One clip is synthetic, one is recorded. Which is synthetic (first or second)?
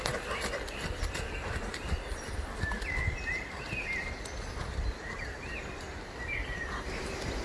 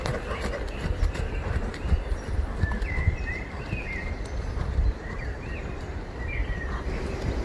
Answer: second